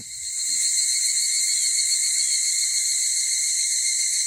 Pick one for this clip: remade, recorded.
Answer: recorded